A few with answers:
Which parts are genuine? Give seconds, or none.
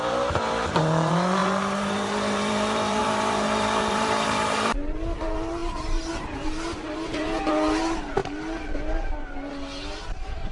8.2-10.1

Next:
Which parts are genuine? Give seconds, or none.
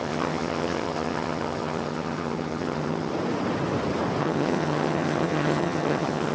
3.1-4.2